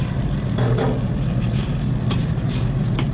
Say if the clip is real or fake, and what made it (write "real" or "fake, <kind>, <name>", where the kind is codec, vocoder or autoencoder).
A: real